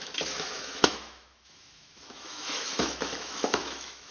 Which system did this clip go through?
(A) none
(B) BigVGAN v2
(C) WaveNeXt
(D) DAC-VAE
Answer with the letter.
D